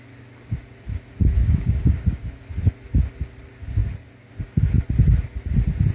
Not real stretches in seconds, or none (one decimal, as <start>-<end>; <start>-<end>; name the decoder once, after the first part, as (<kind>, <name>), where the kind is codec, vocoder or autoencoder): 1.4-2.4 (codec, DAC)